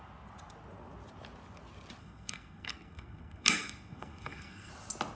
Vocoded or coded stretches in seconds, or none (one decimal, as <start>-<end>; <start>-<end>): 2.0-4.7